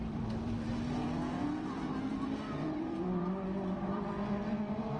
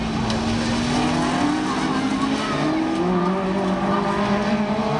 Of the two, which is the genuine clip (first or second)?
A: second